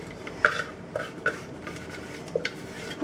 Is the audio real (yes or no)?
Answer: no